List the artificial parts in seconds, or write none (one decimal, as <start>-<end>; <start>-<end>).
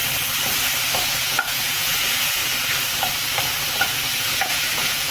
1.1-2.4; 4.2-5.1